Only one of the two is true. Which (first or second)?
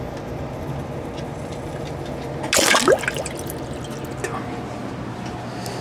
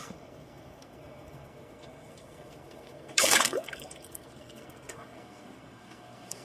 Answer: first